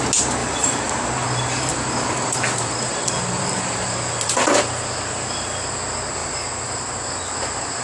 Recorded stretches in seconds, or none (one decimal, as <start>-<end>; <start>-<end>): 0.0-0.4; 4.3-5.1; 5.7-7.8

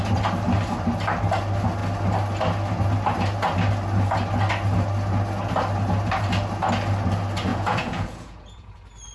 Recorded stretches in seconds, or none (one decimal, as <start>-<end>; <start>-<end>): 0.0-7.5; 8.7-9.1